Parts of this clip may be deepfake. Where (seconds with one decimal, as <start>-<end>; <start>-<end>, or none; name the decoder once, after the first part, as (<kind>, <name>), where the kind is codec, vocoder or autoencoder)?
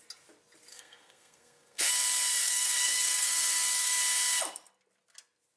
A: 0.7-1.9 (codec, SNAC); 2.4-4.0